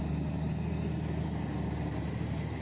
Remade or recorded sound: recorded